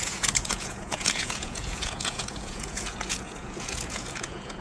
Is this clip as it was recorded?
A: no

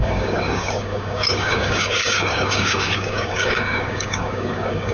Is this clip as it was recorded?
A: no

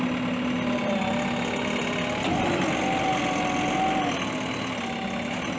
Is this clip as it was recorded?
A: yes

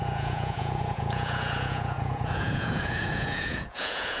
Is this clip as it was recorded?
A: no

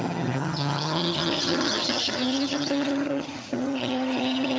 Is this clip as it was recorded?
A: no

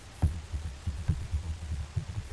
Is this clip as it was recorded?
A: no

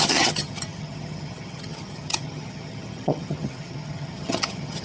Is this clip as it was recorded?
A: no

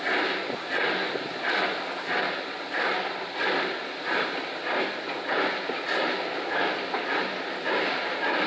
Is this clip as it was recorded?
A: yes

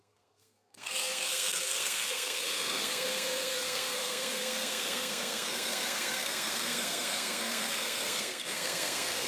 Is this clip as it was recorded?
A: no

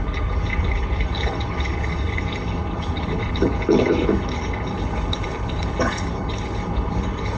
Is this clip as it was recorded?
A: no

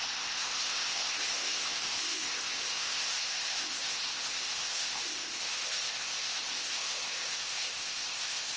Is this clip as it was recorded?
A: no